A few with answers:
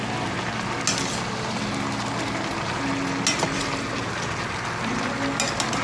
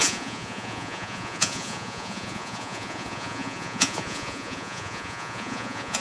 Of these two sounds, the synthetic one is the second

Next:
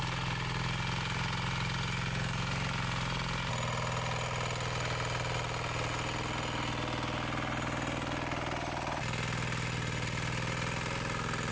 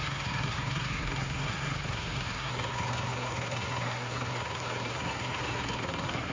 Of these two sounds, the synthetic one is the second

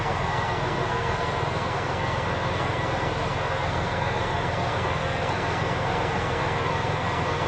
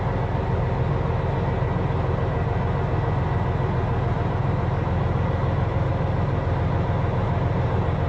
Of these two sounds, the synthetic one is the first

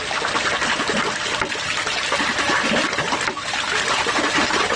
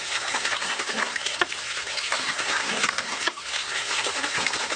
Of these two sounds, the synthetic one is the second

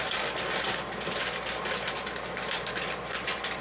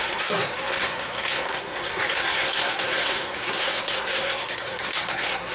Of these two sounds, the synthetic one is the second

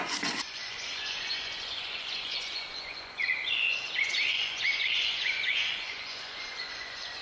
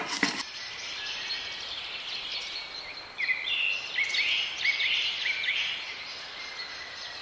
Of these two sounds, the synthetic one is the first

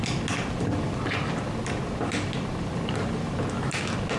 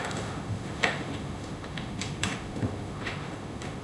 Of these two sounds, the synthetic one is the second